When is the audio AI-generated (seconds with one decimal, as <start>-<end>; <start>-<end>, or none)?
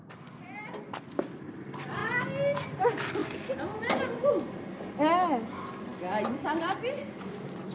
none